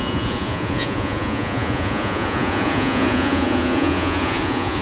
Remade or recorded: remade